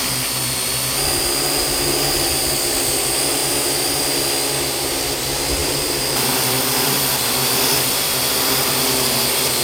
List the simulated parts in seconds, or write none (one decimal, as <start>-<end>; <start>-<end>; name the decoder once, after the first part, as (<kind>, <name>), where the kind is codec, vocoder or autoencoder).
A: 3.4-4.0 (vocoder, BigVGAN v2); 5.6-8.8